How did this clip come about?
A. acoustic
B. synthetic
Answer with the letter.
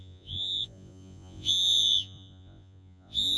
B